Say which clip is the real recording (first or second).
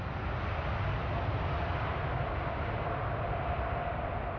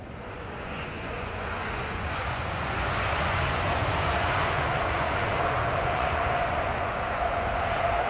first